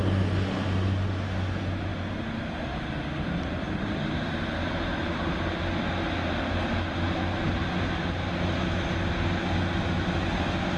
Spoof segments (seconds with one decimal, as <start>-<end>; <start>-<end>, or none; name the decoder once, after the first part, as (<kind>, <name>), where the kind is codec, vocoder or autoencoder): none